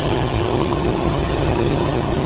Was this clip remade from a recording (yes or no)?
yes